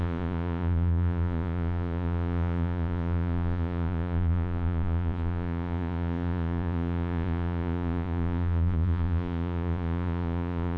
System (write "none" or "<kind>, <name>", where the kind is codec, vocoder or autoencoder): vocoder, Vocos